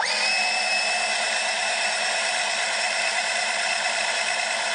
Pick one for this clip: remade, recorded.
remade